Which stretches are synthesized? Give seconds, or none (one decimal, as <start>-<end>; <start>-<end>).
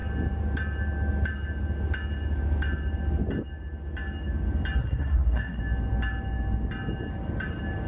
4.8-5.6